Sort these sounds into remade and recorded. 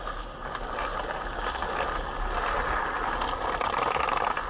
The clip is recorded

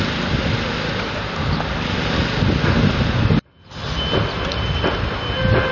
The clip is recorded